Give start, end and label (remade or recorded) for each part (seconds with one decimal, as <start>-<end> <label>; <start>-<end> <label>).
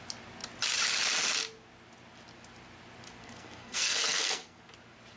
0.0-3.2 recorded; 3.2-4.6 remade; 4.6-5.2 recorded